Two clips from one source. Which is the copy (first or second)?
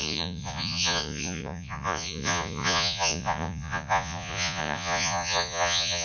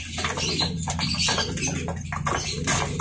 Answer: first